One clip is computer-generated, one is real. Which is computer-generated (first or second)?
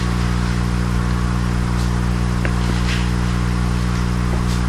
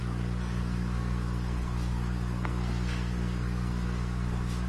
second